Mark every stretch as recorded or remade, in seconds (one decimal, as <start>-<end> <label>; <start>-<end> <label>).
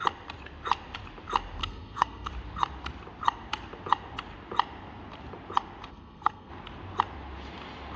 0.0-1.6 recorded; 1.6-2.3 remade; 2.3-5.9 recorded; 5.9-6.5 remade; 6.5-8.0 recorded